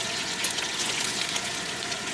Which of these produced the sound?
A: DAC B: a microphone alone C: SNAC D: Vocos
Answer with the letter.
D